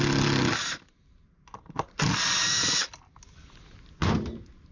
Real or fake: real